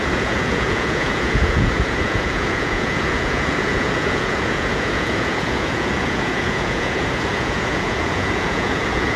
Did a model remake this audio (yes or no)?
yes